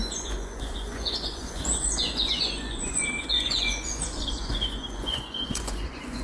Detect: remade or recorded remade